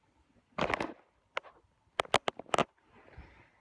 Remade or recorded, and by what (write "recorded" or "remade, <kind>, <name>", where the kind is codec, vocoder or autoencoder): recorded